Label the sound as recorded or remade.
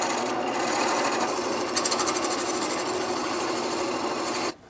recorded